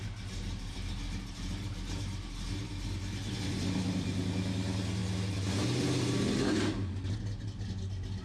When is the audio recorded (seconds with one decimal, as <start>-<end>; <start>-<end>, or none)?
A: 0.0-8.2

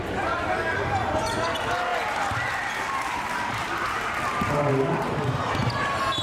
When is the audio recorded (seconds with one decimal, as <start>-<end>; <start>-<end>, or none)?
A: 0.0-6.2